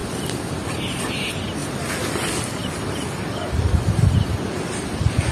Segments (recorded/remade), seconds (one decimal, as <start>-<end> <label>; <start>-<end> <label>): 0.0-5.3 recorded